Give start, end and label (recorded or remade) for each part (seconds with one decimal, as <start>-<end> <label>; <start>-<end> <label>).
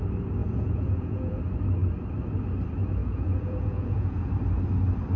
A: 0.0-0.4 recorded; 0.4-1.4 remade; 1.4-3.0 recorded; 3.0-4.3 remade; 4.3-5.2 recorded